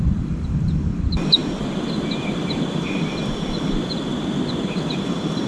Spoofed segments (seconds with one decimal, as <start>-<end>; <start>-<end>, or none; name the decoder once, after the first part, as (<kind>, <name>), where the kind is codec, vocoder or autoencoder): 0.0-4.1 (vocoder, BigVGAN v2); 4.6-5.5